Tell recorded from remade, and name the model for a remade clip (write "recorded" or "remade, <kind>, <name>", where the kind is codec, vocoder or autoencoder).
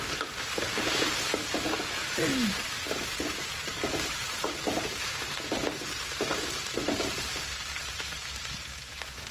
remade, vocoder, BigVGAN v2